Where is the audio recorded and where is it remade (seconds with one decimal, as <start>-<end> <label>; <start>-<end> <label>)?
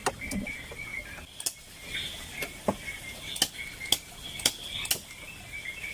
0.0-5.9 recorded